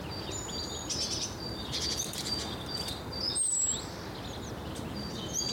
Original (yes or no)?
yes